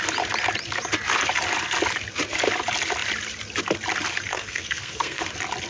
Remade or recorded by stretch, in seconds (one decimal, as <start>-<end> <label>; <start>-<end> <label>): 0.0-4.3 recorded; 4.3-5.2 remade; 5.2-5.7 recorded